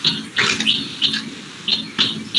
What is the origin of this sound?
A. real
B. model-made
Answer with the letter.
A